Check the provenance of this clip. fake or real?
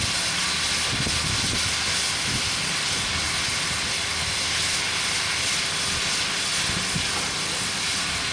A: real